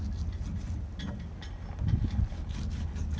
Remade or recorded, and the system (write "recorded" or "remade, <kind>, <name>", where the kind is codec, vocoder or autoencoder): recorded